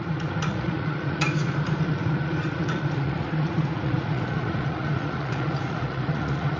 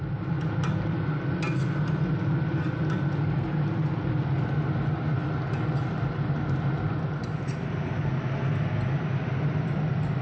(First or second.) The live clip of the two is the second